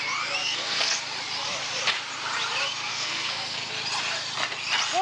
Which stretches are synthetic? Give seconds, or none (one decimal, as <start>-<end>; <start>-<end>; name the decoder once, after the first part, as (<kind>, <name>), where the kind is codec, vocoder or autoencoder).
0.4-1.0 (codec, SNAC); 2.9-3.7